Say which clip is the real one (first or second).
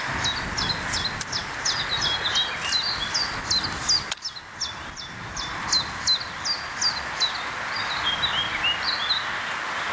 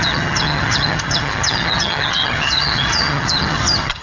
first